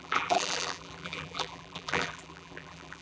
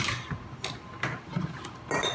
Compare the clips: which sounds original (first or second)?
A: second